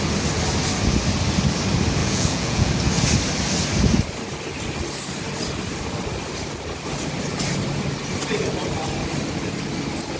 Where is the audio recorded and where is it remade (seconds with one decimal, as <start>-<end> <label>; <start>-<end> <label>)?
0.0-2.0 recorded; 2.0-2.7 remade; 2.7-10.2 recorded